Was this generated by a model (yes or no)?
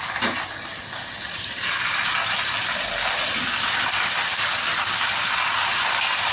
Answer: no